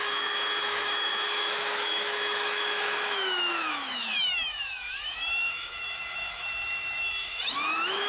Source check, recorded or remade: remade